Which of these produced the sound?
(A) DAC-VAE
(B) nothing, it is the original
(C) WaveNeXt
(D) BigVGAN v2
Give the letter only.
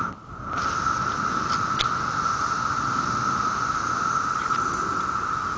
B